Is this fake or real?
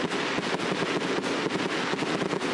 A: real